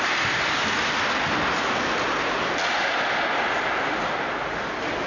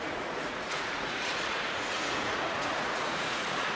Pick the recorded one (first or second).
first